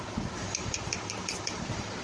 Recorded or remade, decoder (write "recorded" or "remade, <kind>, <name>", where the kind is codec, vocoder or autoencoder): remade, vocoder, BigVGAN v2